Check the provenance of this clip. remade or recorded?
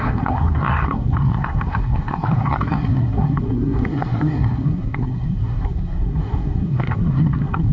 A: remade